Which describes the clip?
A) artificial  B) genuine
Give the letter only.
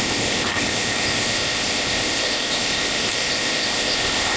A